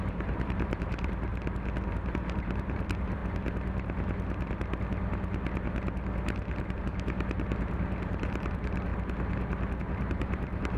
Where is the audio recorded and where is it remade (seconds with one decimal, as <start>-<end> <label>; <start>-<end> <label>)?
0.0-1.3 remade; 1.3-1.9 recorded; 1.9-3.2 remade; 3.2-6.8 recorded; 6.8-8.9 remade; 8.9-9.8 recorded; 9.8-10.8 remade